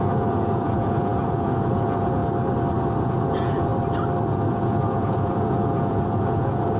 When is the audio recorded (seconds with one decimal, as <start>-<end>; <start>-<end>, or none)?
2.2-3.0; 3.7-4.3